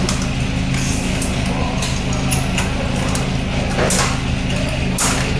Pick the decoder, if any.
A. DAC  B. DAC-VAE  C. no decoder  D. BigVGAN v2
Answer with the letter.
C